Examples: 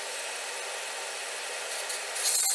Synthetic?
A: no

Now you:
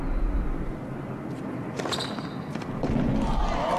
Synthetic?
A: no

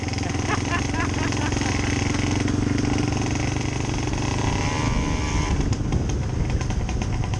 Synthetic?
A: no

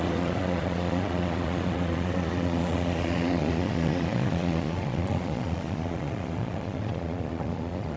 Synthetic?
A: yes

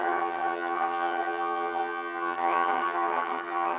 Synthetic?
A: yes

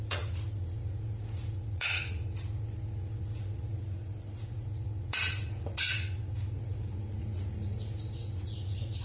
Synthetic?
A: yes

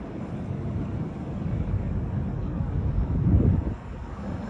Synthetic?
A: yes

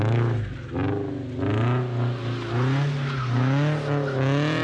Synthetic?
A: no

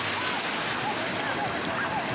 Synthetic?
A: no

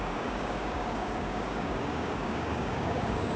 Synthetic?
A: yes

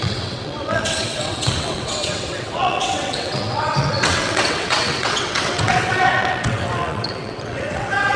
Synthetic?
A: yes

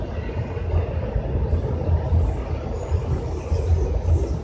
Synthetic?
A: no